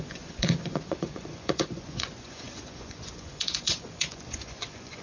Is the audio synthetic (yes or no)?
yes